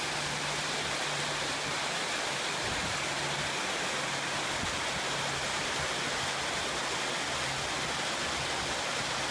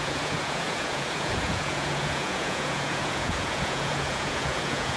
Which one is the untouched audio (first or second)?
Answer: first